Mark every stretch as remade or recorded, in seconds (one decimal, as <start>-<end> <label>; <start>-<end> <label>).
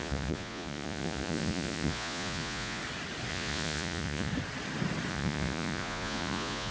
0.0-2.8 remade; 2.8-3.3 recorded; 3.3-4.3 remade; 4.3-5.1 recorded; 5.1-6.7 remade